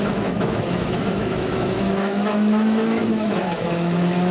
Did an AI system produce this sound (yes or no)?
yes